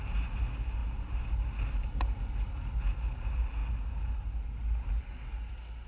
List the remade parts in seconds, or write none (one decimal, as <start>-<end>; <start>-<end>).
none